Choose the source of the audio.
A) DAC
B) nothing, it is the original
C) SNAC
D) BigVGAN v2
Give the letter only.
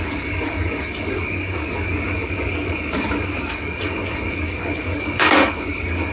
A